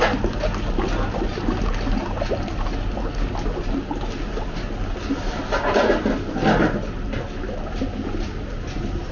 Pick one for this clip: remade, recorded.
recorded